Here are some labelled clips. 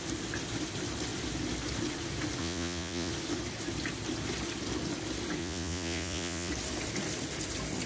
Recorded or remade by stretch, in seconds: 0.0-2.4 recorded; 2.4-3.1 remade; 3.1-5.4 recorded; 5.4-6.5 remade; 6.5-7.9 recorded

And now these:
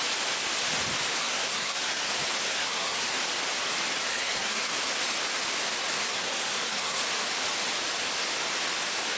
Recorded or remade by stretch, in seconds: 0.0-1.2 recorded; 1.2-2.1 remade; 2.1-2.5 recorded; 2.5-3.1 remade; 3.1-4.1 recorded; 4.1-4.7 remade; 4.7-6.0 recorded; 6.0-7.0 remade; 7.0-9.2 recorded

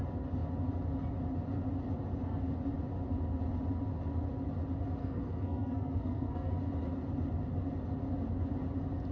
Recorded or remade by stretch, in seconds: 0.0-5.0 recorded; 5.0-6.5 remade; 6.5-9.1 recorded